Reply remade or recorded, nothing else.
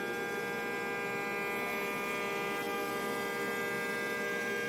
recorded